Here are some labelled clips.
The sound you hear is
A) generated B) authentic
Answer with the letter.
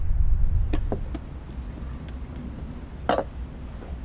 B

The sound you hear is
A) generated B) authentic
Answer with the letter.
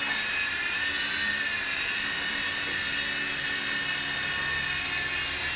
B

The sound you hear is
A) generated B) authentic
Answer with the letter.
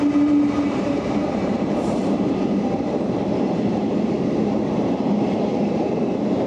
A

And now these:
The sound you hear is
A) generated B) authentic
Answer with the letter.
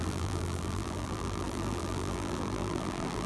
A